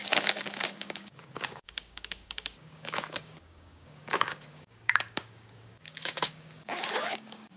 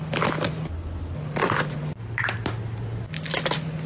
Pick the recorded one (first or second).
second